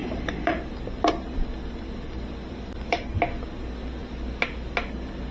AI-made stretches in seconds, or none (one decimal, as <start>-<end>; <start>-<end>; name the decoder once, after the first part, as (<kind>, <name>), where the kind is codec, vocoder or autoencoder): 0.0-3.1 (vocoder, BigVGAN v2)